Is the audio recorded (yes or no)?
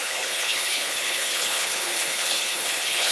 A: no